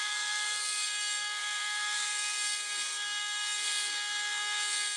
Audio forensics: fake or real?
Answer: fake